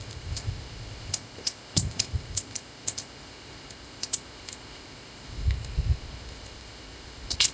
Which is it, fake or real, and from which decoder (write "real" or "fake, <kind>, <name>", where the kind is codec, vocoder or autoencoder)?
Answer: fake, codec, ZipCodec